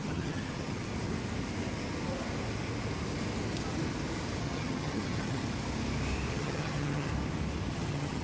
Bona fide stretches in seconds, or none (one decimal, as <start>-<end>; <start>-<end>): 0.9-4.4; 5.4-6.3; 7.1-7.7